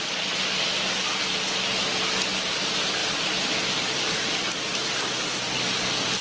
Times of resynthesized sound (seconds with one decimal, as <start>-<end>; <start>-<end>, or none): none